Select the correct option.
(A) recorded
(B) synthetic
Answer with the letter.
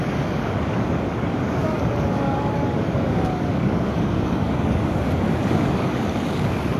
B